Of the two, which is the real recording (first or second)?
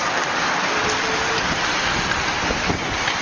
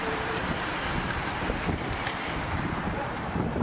first